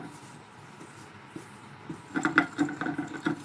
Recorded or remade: recorded